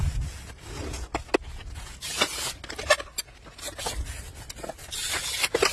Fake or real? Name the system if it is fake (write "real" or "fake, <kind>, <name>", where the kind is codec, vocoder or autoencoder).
real